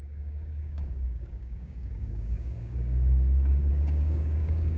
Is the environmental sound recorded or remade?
remade